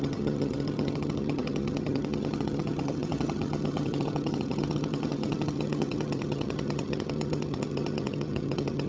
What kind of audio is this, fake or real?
fake